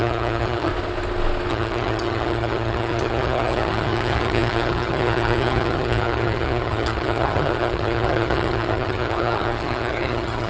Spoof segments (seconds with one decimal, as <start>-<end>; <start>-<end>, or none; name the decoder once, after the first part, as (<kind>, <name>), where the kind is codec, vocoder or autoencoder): 0.0-0.7 (vocoder, HiFi-GAN); 1.5-10.5